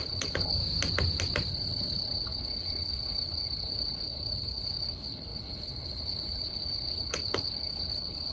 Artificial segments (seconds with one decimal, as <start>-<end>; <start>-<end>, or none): 0.0-0.6; 1.5-8.3